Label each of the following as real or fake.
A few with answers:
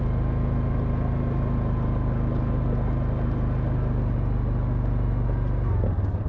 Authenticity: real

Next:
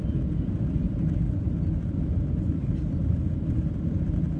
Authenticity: real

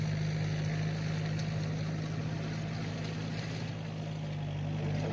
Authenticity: real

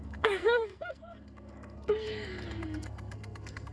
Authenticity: fake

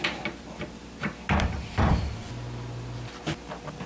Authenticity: real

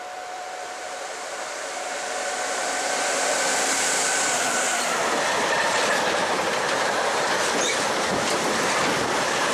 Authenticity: fake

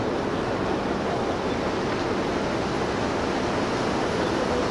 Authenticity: real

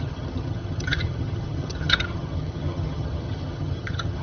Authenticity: fake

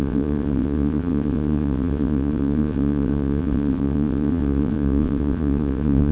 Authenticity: fake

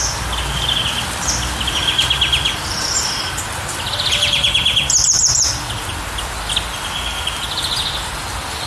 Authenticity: real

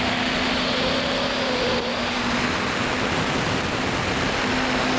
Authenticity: real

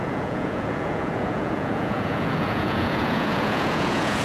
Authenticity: fake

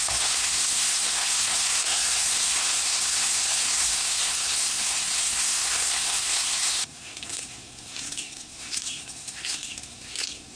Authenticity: fake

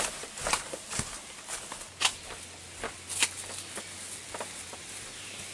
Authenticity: real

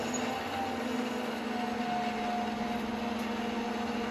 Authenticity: real